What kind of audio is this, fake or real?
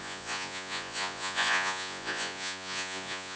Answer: fake